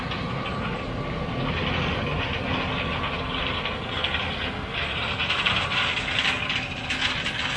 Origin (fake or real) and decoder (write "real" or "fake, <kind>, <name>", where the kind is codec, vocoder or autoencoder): real